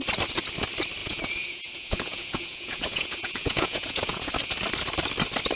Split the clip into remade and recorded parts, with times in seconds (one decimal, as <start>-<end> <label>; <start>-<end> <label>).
0.0-1.0 recorded; 1.0-4.3 remade; 4.3-5.6 recorded